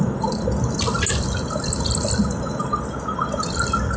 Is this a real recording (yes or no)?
yes